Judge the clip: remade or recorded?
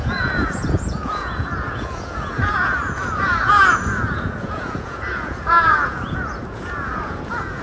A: remade